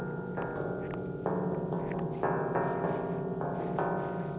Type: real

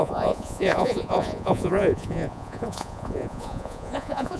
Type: fake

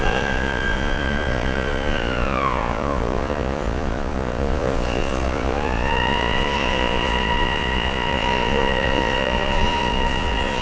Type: fake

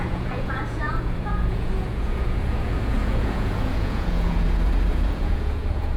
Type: fake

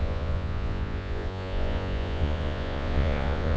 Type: fake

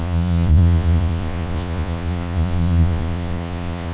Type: fake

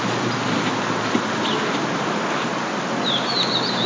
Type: real